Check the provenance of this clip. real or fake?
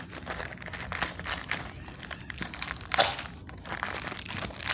real